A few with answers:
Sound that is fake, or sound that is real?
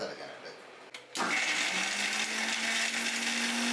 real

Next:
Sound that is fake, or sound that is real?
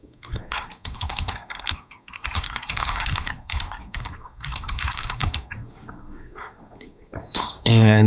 fake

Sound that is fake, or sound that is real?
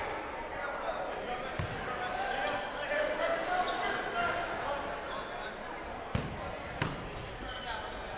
real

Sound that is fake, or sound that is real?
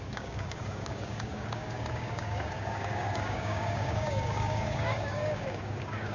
fake